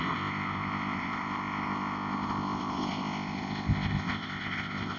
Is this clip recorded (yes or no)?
no